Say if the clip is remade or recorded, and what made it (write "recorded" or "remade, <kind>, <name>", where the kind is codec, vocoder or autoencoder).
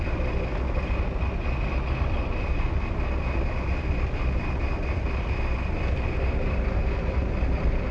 recorded